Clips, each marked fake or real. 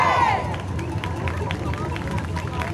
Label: real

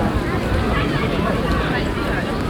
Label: fake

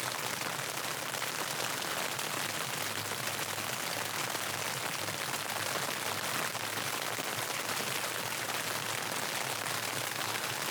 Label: real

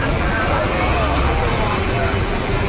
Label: fake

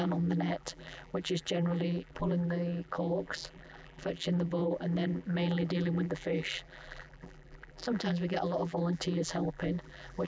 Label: fake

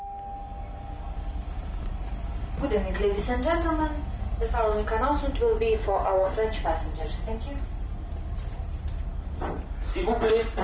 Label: real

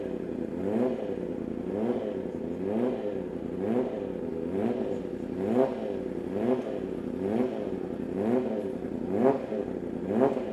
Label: real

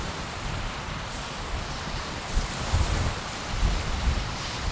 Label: fake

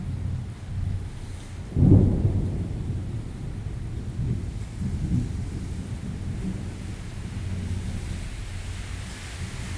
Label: real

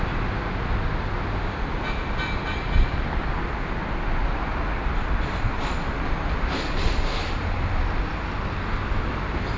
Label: real